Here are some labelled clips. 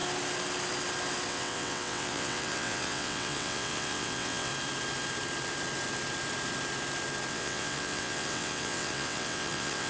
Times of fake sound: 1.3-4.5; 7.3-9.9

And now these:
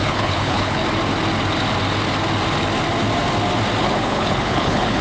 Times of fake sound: 0.0-0.8; 3.8-5.0

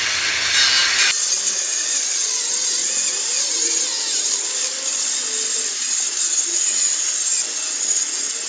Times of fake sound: none

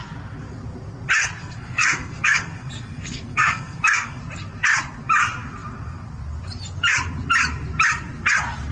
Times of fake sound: 1.4-4.2

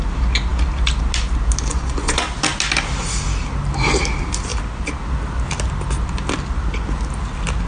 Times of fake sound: 1.7-2.2

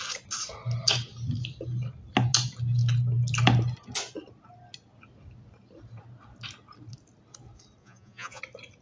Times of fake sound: 7.8-8.4

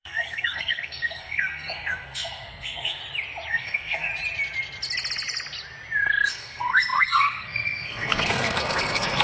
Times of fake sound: 0.0-3.0; 3.5-4.1; 6.1-9.2

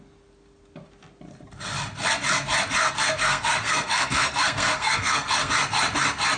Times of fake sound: 2.8-5.5